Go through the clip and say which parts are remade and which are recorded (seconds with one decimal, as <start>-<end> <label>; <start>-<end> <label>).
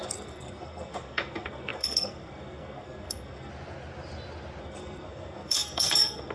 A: 0.0-3.5 remade; 3.5-4.6 recorded; 4.6-6.3 remade